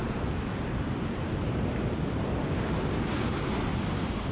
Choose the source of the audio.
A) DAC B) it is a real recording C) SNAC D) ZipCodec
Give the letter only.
B